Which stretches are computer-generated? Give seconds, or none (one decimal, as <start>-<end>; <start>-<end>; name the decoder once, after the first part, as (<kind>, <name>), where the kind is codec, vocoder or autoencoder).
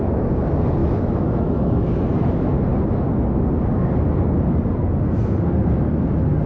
0.8-2.1 (autoencoder, DAC-VAE)